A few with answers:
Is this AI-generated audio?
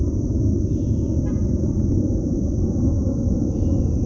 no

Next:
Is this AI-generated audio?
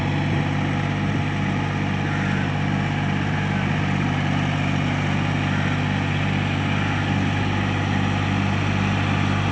no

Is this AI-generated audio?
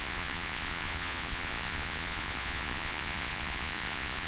yes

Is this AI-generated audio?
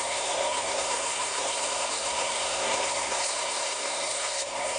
yes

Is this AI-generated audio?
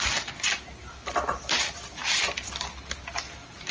no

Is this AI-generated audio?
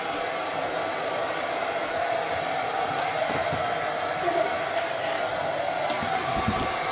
no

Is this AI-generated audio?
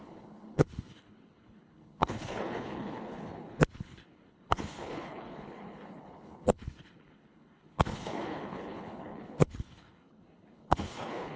yes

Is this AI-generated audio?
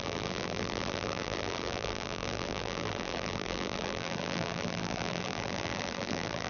yes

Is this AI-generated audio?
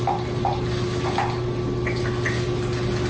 no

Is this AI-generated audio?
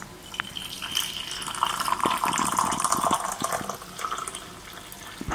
no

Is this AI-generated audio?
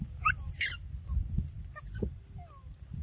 no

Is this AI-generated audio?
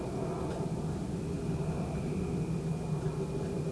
no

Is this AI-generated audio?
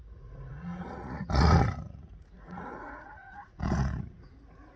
yes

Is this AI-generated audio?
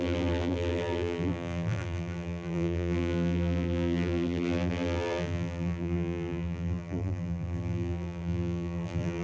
yes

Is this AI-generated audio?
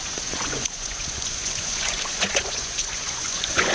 yes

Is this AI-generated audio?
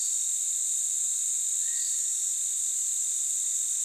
no